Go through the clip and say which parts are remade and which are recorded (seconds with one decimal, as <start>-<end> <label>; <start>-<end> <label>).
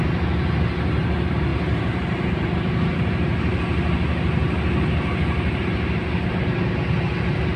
0.0-7.6 recorded